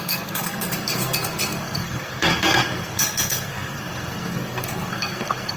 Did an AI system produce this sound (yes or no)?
yes